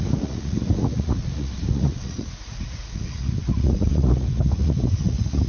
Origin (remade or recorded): remade